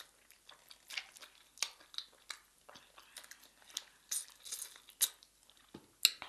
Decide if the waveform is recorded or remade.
recorded